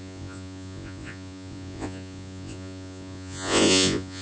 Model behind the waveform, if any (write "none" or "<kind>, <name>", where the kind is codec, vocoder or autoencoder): vocoder, Vocos